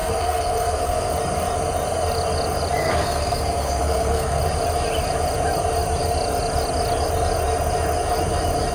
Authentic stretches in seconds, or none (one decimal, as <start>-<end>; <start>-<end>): 1.1-2.8; 4.4-8.7